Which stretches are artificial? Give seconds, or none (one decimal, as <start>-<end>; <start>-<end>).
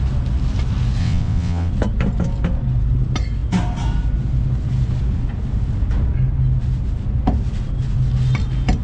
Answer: 1.0-1.7